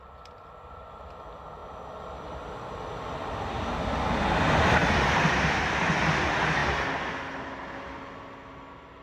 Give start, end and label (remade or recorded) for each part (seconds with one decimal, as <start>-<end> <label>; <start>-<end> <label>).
0.0-9.0 recorded

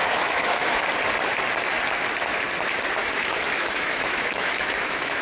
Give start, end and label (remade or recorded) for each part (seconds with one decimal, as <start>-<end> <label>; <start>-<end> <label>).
0.0-0.9 remade; 0.9-3.0 recorded; 3.0-5.2 remade